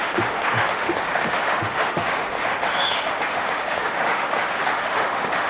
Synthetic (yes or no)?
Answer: yes